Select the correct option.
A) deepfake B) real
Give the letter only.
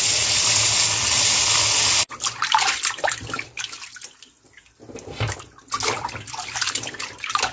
B